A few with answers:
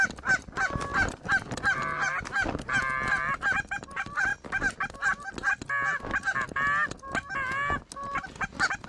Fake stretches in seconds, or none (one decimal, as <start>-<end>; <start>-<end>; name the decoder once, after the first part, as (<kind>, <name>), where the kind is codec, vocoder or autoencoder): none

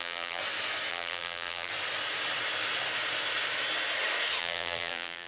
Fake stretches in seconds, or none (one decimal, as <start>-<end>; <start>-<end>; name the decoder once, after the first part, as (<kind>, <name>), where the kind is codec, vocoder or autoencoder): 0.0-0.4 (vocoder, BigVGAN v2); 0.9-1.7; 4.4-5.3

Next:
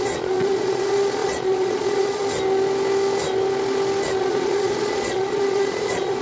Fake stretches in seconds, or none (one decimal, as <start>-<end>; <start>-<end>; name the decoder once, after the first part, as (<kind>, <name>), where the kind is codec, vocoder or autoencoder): 0.0-2.2 (vocoder, Vocos); 4.2-6.2

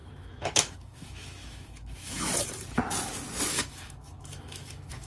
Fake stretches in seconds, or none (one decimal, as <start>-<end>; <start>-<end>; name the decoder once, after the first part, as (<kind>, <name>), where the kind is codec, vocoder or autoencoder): 0.0-2.3 (autoencoder, DAC-VAE); 3.5-5.1

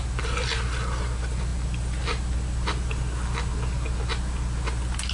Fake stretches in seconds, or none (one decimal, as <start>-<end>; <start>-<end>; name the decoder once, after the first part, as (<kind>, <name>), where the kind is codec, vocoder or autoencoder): none

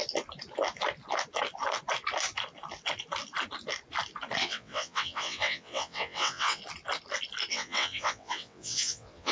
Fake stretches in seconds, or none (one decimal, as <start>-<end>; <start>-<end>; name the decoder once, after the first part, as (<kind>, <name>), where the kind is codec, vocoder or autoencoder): 4.4-6.6 (vocoder, WaveNeXt); 7.5-9.3

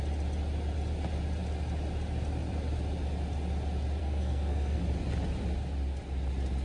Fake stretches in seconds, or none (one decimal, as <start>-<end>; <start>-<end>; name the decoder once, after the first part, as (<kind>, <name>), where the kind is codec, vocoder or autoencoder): 4.0-4.8 (codec, SNAC)